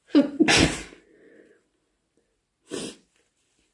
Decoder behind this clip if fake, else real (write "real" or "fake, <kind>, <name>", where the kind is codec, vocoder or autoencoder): real